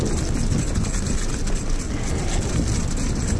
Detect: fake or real real